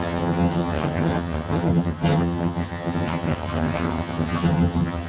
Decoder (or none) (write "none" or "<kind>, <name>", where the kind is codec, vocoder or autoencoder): vocoder, HiFi-GAN